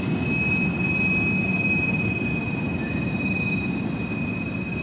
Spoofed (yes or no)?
no